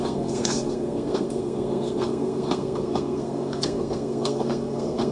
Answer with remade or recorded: remade